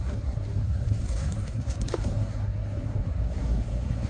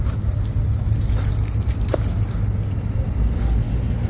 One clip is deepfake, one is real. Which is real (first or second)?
second